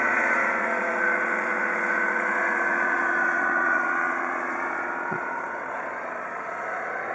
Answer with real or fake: fake